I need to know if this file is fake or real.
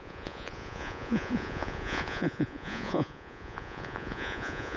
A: fake